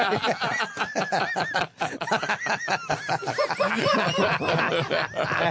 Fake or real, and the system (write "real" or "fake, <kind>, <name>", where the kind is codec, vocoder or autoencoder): real